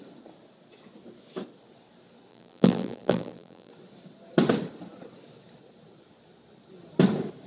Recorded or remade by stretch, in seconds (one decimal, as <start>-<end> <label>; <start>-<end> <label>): 0.0-2.3 recorded; 2.3-3.7 remade; 3.7-7.5 recorded